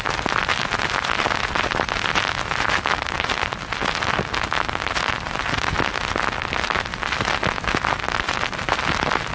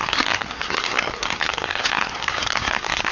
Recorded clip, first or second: first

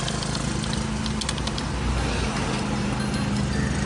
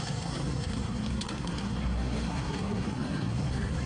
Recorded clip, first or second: first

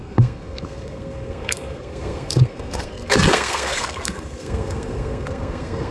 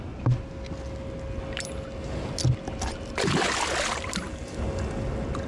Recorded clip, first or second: second